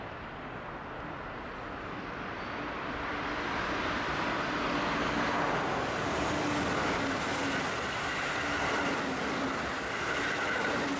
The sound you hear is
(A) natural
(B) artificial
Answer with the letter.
A